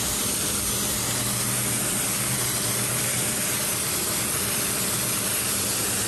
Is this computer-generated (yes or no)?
no